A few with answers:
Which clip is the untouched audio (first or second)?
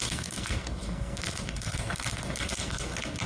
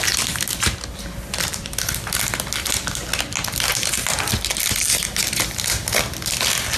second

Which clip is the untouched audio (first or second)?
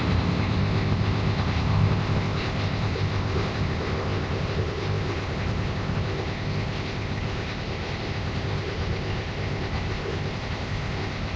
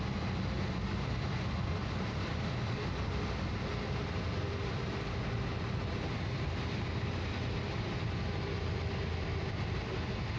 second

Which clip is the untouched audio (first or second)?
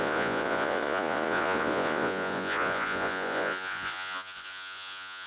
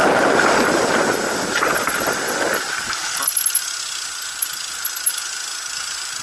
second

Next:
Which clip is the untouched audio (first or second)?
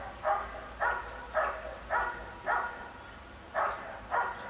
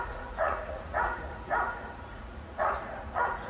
first